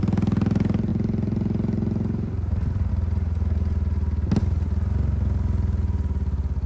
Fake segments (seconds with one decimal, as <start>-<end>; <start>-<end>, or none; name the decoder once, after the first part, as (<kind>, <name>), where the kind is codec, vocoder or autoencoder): 0.9-2.9 (vocoder, BigVGAN v2)